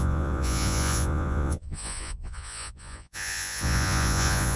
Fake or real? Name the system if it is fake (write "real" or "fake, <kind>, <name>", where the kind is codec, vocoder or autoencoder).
fake, vocoder, Vocos